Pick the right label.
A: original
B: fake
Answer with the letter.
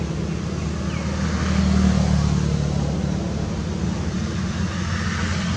A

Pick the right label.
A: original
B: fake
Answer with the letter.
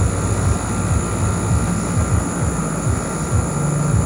A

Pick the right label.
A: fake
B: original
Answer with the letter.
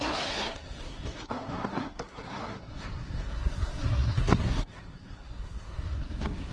A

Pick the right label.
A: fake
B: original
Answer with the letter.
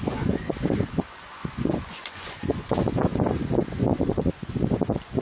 A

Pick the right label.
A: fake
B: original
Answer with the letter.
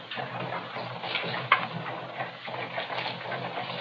B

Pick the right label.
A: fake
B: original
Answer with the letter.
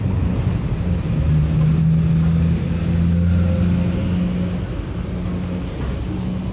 B